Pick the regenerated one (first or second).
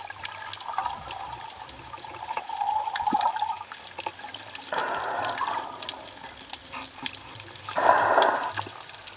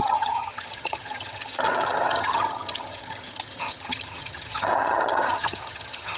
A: second